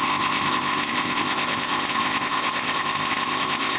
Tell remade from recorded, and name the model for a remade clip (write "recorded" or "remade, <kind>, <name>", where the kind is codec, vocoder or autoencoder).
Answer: remade, codec, ZipCodec